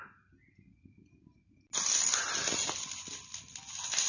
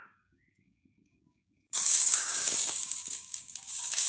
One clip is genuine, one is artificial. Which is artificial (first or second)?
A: second